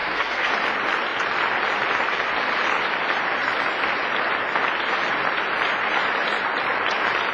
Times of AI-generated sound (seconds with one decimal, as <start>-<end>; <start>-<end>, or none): 0.0-0.5